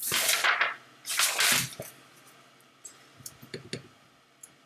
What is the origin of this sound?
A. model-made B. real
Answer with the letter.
B